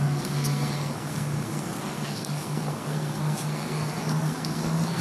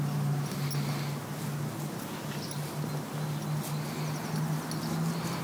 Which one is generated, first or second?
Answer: first